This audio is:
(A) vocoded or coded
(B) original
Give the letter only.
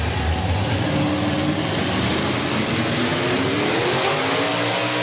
B